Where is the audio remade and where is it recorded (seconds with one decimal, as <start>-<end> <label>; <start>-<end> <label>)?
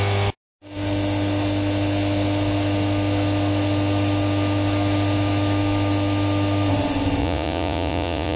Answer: 0.0-7.2 recorded; 7.2-8.4 remade